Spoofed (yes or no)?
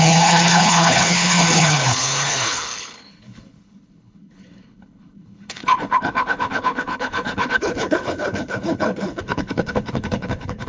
yes